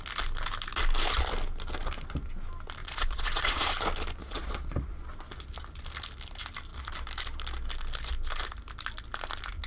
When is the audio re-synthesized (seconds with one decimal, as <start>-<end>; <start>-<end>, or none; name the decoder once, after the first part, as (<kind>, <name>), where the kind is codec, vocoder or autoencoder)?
2.8-3.7 (vocoder, Vocos); 4.2-4.9